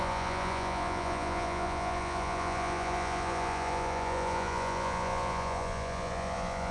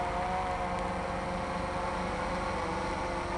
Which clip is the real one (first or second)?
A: second